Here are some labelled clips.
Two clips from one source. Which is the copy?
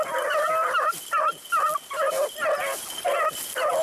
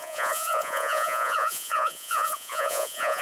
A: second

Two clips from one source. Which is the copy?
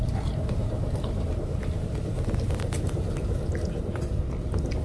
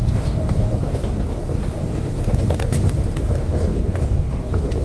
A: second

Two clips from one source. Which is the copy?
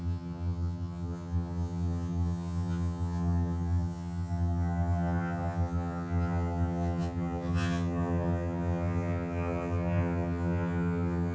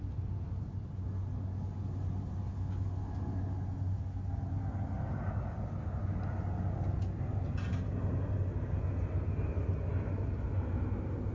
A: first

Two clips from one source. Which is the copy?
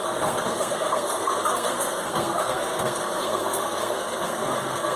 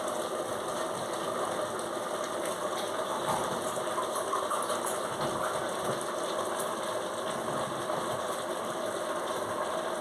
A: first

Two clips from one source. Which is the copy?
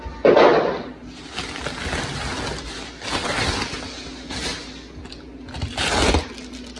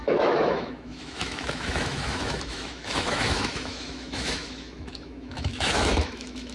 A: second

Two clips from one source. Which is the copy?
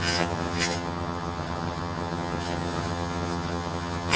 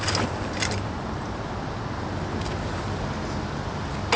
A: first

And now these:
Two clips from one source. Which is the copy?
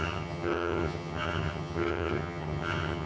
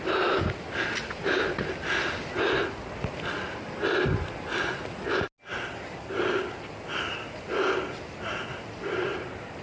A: first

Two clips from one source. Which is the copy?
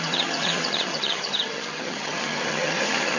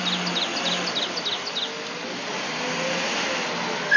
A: first